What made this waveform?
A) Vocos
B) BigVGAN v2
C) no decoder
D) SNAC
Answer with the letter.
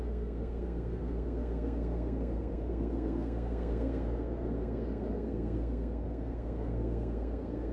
D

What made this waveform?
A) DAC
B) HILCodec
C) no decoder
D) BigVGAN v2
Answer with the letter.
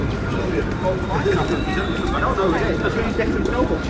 D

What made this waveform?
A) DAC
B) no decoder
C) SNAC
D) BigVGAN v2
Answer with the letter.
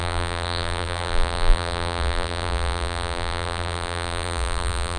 D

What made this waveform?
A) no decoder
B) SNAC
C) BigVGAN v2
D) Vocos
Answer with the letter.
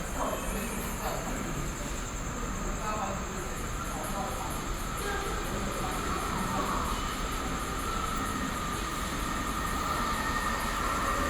A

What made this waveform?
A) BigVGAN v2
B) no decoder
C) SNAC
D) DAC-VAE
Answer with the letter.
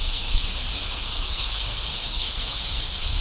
C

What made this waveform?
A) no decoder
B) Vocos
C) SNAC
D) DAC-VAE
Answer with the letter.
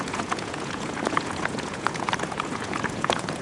B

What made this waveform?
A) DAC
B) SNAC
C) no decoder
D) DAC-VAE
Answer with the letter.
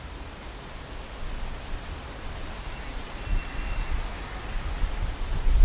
C